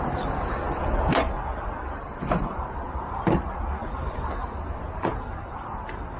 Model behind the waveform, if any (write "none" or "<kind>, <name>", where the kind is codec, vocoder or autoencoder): none